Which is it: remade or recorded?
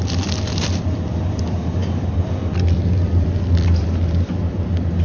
remade